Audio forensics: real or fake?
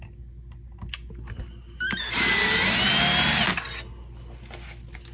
real